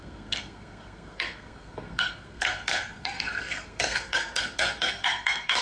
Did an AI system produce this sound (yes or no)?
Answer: yes